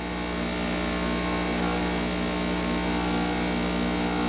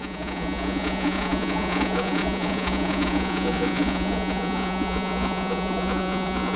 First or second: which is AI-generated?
second